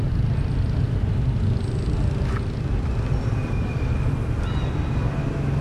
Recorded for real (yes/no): yes